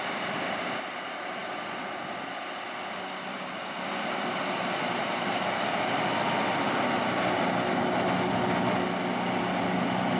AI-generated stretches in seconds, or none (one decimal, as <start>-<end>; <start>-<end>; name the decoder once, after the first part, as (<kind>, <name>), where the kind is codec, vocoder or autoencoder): 1.4-2.4 (vocoder, BigVGAN v2)